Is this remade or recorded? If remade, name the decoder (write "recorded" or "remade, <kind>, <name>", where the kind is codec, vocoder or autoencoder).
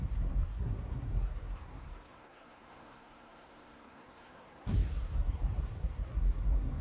remade, codec, SNAC